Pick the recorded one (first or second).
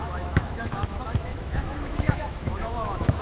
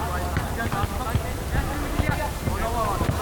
second